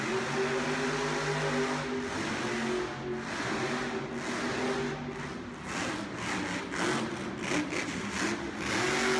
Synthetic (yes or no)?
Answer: no